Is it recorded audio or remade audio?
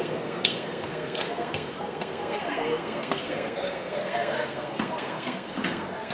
remade